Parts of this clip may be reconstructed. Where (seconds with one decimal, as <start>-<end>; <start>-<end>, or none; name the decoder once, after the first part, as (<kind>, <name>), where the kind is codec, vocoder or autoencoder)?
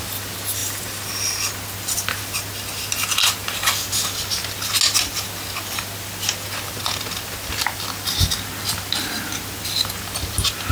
0.6-1.1 (vocoder, BigVGAN v2)